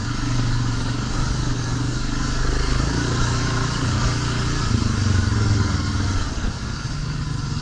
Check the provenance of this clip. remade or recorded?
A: remade